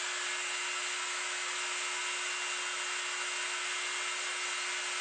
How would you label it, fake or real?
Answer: real